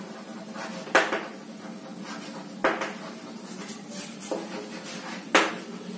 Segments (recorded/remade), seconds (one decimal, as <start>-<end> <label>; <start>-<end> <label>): 0.0-6.0 recorded